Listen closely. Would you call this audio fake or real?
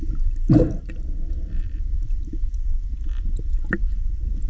real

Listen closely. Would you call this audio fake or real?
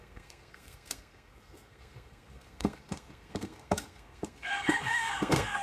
fake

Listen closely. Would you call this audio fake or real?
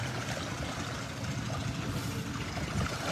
real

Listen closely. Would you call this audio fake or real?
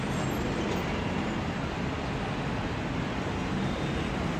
real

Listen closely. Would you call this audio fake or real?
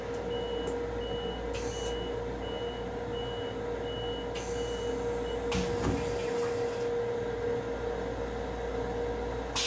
real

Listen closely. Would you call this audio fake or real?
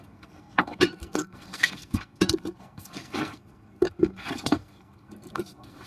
fake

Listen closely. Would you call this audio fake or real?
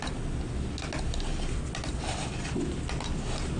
real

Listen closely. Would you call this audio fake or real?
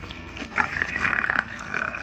fake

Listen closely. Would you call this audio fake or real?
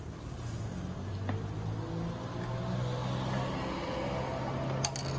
real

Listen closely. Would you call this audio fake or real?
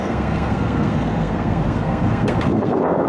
fake